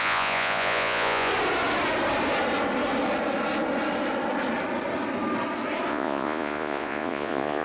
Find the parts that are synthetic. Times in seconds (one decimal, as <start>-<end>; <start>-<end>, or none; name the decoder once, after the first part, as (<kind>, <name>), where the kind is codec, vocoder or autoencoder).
0.0-1.3 (vocoder, Vocos); 5.9-7.6